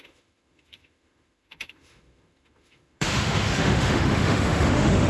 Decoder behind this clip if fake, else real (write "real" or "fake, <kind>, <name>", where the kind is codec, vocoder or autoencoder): fake, autoencoder, DAC-VAE